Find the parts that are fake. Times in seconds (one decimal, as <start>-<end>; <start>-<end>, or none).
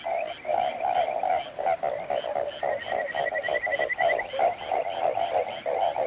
none